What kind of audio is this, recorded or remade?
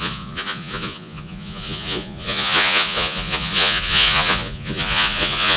remade